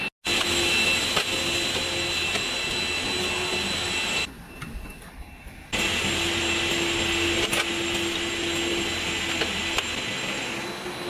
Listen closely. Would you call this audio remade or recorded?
recorded